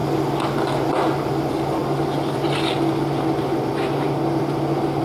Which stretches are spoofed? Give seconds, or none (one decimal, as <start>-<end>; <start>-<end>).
none